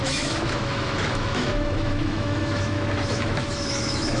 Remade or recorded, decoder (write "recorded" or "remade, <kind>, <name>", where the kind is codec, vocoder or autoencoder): remade, autoencoder, DAC-VAE